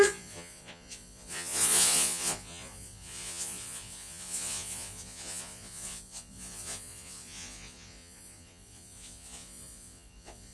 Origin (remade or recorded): remade